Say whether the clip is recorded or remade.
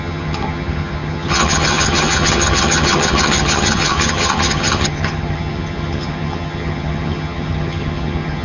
remade